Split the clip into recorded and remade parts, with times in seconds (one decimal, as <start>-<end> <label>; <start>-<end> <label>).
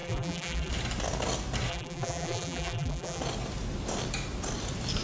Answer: 0.0-0.7 remade; 0.7-1.7 recorded; 1.7-3.2 remade; 3.2-5.0 recorded